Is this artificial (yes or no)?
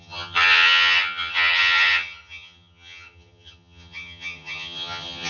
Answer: yes